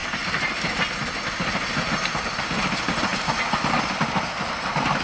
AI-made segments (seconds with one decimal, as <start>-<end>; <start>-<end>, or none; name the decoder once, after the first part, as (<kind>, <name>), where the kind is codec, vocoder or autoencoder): none